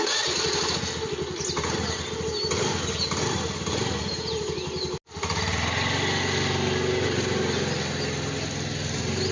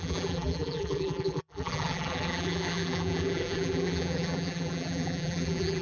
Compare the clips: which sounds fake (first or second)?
second